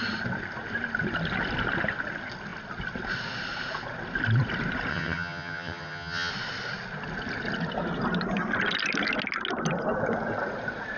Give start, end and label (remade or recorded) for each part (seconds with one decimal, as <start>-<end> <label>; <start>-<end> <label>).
0.0-4.9 recorded; 4.9-6.3 remade; 6.3-11.0 recorded